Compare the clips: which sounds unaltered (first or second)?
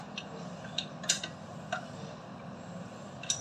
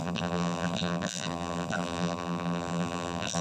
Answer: first